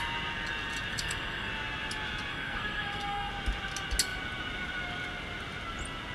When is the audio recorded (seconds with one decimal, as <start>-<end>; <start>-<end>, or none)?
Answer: 0.0-0.9; 1.5-2.3; 3.3-6.1